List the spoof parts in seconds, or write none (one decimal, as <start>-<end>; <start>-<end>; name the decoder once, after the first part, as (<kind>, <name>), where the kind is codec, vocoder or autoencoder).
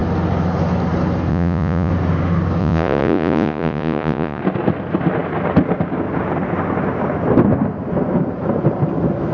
1.3-1.9 (vocoder, Vocos); 2.6-4.4